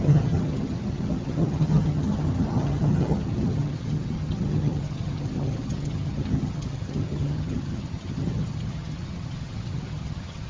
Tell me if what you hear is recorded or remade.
remade